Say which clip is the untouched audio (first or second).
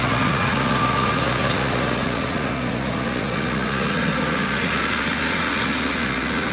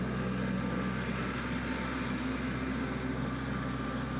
second